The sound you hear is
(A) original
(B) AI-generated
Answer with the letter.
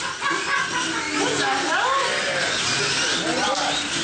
A